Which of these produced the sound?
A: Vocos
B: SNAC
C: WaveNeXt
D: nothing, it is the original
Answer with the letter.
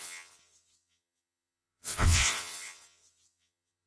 C